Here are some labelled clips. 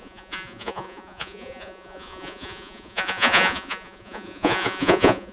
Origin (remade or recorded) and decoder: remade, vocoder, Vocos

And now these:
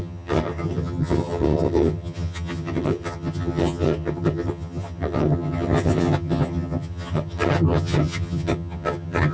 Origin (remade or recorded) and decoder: remade, vocoder, HiFi-GAN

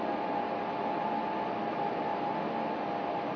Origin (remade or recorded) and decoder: recorded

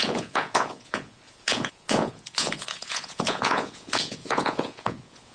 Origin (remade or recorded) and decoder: remade, vocoder, Vocos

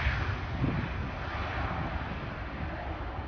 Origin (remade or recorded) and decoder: recorded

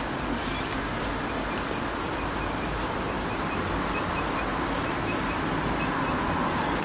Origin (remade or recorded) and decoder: recorded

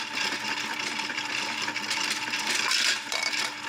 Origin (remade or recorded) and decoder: recorded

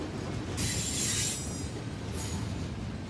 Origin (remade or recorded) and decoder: recorded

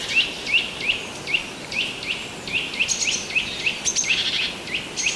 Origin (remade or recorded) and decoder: recorded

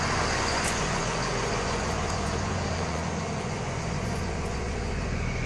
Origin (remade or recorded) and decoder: remade, vocoder, Vocos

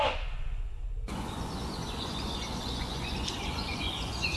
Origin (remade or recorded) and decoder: remade, vocoder, Vocos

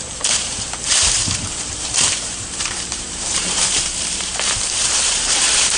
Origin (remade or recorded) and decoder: remade, vocoder, BigVGAN v2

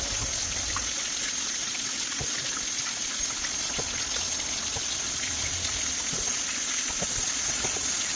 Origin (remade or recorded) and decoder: recorded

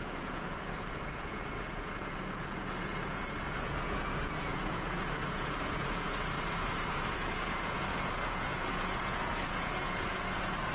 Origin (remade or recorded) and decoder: remade, vocoder, Vocos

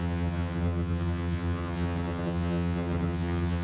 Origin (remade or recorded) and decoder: remade, vocoder, HiFi-GAN